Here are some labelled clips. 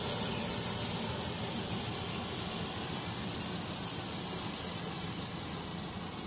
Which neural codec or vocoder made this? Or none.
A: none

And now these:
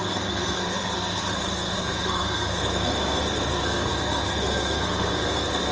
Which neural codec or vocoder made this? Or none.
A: codec, SNAC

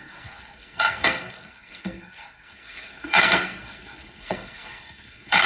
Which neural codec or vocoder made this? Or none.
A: codec, SNAC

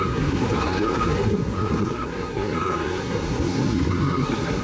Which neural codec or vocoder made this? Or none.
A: codec, SNAC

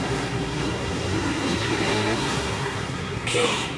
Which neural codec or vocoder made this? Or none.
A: codec, SNAC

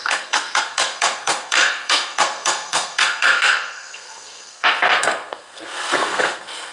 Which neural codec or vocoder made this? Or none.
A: codec, SNAC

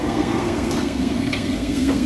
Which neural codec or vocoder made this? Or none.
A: codec, SNAC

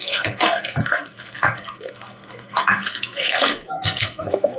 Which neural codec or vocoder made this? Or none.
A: codec, SNAC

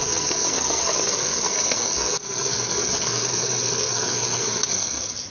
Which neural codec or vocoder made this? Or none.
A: codec, SNAC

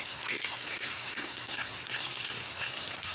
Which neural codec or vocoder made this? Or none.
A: codec, SNAC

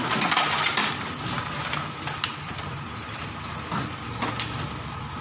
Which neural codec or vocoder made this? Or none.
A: none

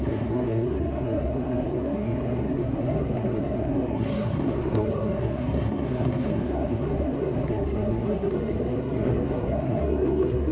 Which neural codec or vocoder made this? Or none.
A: codec, SNAC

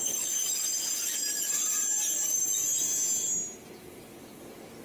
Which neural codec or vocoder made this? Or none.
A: none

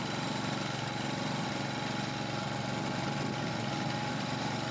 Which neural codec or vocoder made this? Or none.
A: none